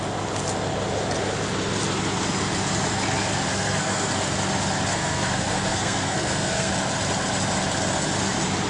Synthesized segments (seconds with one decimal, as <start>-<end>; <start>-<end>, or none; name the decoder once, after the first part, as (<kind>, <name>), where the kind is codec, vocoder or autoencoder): 3.5-4.1 (codec, SNAC); 4.9-6.7